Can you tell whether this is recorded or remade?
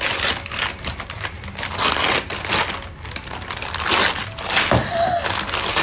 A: recorded